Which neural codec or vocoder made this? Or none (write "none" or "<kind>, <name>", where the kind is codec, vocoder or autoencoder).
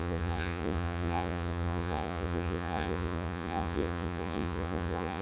vocoder, Vocos